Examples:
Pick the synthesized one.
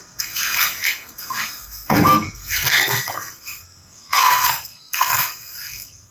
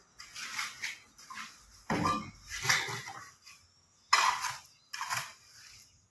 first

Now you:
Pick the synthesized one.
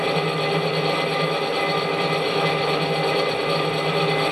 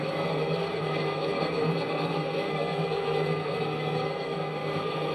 second